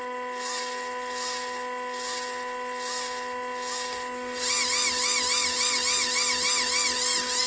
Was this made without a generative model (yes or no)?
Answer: yes